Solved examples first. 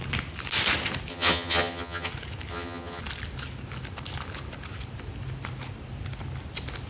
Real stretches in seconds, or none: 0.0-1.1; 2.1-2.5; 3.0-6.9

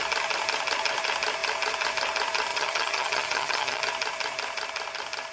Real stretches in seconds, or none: 0.0-2.5; 3.8-5.3

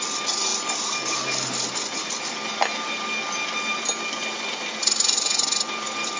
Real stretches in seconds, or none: 0.0-6.2

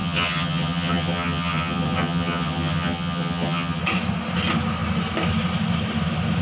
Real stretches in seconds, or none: 3.8-6.4